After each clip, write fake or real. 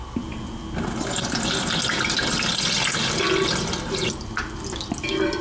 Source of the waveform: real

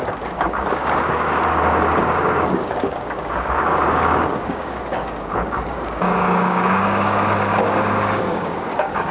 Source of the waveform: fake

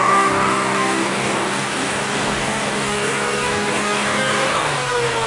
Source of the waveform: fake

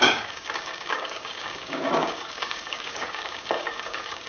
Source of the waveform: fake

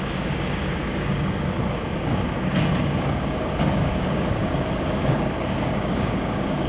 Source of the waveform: fake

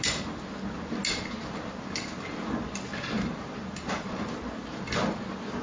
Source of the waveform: real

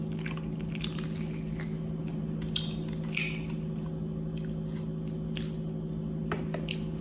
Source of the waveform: real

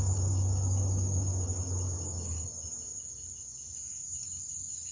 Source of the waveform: fake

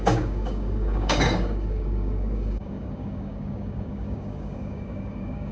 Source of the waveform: fake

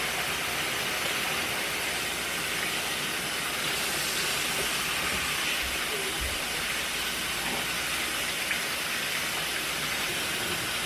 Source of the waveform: real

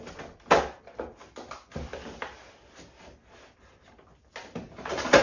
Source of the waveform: real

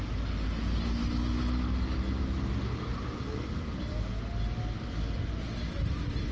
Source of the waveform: real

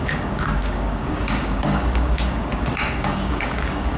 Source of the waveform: fake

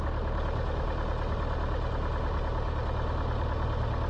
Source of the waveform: real